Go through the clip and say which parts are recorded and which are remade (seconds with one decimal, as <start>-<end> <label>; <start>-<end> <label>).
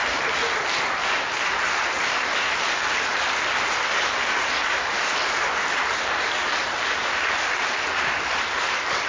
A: 0.0-9.1 recorded